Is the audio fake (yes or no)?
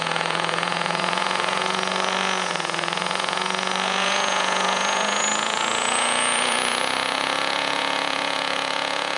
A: yes